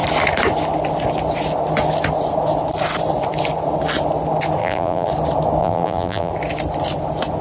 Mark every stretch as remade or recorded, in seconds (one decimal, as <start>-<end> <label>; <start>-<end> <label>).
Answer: 0.0-4.6 recorded; 4.6-5.1 remade; 5.1-5.6 recorded; 5.6-6.3 remade; 6.3-7.4 recorded

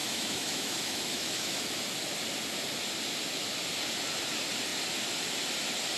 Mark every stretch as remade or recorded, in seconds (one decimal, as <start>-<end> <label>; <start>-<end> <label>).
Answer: 0.0-1.9 remade; 1.9-6.0 recorded

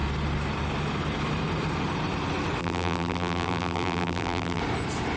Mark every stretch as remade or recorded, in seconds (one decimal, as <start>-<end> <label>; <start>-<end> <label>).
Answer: 0.0-2.6 recorded; 2.6-4.6 remade; 4.6-5.2 recorded